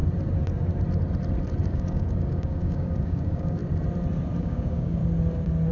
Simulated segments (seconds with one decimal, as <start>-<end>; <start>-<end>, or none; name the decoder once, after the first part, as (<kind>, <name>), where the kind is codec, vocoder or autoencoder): 1.6-3.6 (codec, DAC); 4.4-5.0